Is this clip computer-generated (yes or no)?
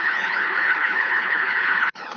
yes